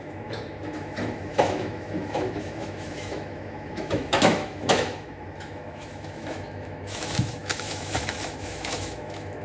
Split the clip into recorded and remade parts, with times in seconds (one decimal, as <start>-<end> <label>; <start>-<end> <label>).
0.0-9.4 remade